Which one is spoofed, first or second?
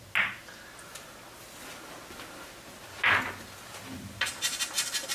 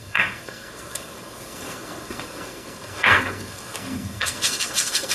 second